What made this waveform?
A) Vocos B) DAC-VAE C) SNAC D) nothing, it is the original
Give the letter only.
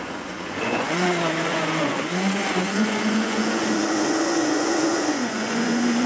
A